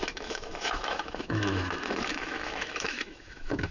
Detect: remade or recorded remade